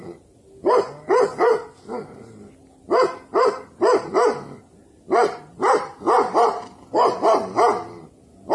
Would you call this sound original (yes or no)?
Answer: yes